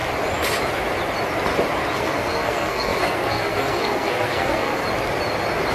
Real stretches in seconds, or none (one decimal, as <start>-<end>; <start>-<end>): 0.0-1.9; 4.8-5.7